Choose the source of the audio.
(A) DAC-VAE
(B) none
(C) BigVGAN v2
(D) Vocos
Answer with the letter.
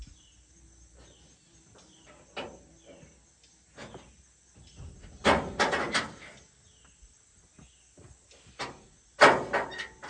B